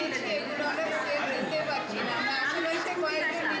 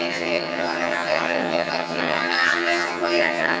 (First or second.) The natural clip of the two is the first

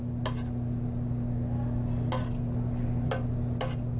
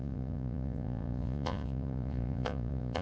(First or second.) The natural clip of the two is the first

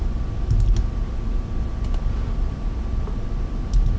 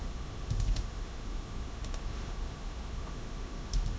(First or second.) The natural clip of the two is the first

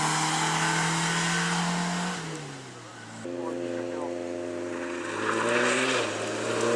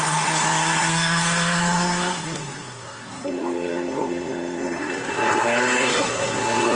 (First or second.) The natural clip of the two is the first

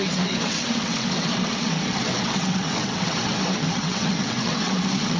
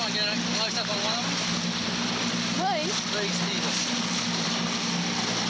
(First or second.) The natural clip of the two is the second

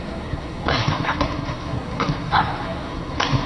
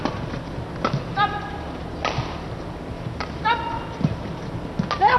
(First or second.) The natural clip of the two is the second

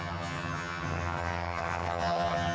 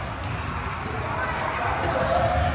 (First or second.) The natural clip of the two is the second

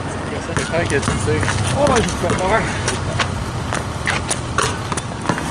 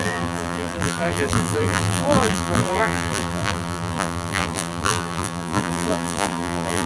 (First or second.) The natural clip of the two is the first